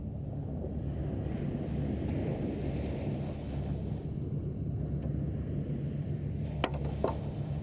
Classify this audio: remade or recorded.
recorded